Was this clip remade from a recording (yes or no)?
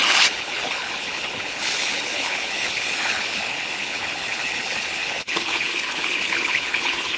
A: yes